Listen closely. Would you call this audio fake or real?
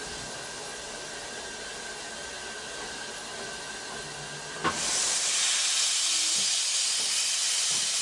real